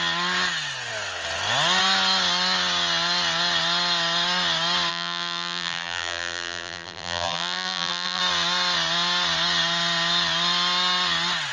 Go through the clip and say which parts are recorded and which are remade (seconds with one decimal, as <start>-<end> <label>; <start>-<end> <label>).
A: 0.0-4.9 recorded; 4.9-8.2 remade; 8.2-11.5 recorded